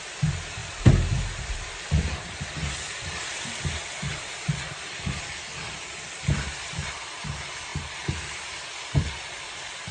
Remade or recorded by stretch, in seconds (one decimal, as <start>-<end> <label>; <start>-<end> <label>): 0.0-0.6 recorded; 0.6-5.8 remade; 5.8-9.9 recorded